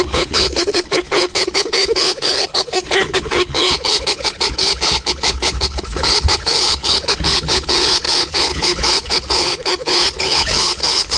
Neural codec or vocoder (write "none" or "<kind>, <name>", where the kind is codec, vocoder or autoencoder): codec, HILCodec